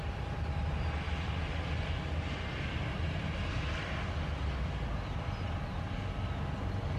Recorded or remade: recorded